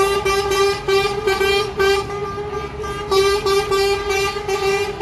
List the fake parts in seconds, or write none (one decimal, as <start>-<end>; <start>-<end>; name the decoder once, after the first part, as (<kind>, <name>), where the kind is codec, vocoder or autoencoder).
none